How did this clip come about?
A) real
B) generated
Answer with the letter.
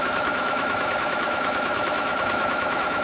B